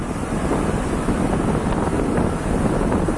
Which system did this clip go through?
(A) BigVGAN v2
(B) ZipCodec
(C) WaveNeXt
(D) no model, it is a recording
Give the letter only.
D